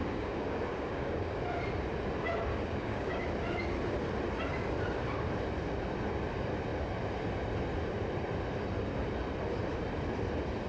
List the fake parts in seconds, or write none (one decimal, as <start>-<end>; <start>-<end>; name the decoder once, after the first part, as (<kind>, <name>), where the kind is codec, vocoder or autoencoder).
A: 0.0-1.4 (codec, DAC); 2.5-3.2

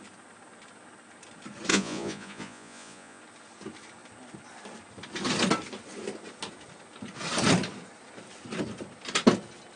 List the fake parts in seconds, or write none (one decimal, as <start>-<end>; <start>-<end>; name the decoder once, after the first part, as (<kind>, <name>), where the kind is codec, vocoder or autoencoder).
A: 1.7-3.2 (vocoder, Vocos)

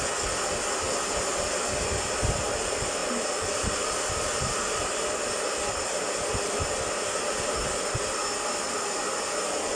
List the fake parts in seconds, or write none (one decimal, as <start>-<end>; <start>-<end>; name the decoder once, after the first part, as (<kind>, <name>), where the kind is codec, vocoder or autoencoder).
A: none

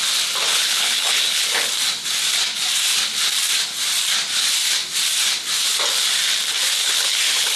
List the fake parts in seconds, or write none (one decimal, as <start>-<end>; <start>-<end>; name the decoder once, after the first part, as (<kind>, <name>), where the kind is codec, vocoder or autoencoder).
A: 0.5-1.7 (codec, HILCodec); 6.8-7.6

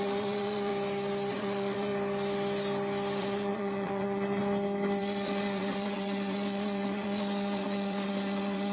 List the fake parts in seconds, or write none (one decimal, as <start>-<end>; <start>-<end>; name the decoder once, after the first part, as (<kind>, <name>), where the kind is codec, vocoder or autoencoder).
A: 0.0-0.7 (vocoder, Vocos); 1.3-1.9; 3.2-4.4; 5.0-8.7

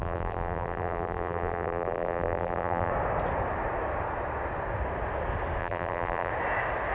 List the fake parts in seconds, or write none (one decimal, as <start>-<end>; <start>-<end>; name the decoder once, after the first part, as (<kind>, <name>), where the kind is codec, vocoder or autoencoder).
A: 0.0-2.9 (vocoder, BigVGAN v2); 5.6-6.3

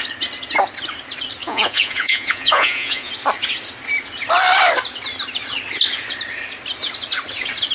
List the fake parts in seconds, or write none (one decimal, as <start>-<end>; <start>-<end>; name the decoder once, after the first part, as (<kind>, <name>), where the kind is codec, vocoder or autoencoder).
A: 1.4-3.1 (vocoder, Vocos)